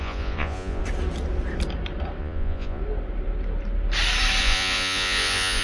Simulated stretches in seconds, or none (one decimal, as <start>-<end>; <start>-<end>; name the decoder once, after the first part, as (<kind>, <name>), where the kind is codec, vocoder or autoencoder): 0.0-0.8 (vocoder, Vocos); 2.2-2.8; 4.4-5.6